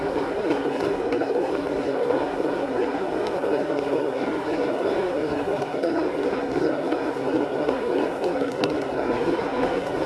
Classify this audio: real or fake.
fake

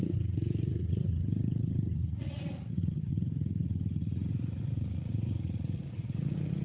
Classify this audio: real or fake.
fake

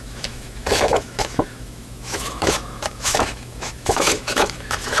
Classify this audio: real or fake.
fake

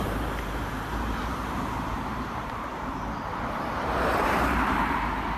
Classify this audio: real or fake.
fake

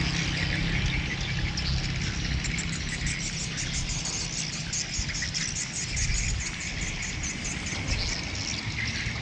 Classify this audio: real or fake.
real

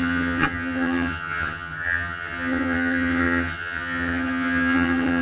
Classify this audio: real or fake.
fake